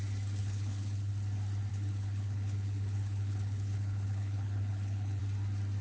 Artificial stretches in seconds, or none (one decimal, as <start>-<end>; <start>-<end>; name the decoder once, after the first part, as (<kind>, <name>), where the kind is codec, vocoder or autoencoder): 0.4-1.1 (codec, HILCodec); 1.7-5.2